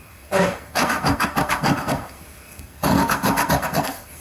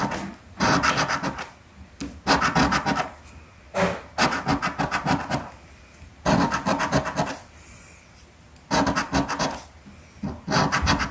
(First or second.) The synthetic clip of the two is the first